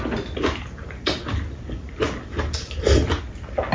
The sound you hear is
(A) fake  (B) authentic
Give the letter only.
B